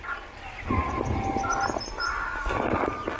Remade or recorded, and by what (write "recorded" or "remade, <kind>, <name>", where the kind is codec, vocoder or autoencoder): recorded